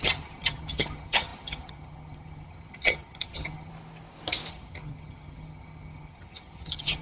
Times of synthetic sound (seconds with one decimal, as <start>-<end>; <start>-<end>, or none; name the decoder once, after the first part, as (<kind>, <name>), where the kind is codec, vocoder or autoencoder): 0.0-3.7 (vocoder, HiFi-GAN); 4.5-7.0